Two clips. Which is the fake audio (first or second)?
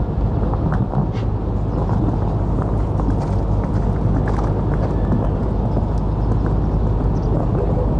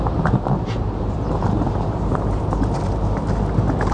second